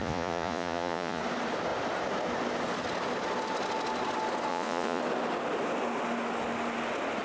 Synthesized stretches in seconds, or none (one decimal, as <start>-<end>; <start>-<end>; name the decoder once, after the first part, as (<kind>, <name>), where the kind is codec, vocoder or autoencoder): 0.0-1.2 (vocoder, Vocos); 4.5-5.0